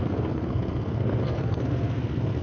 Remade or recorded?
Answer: remade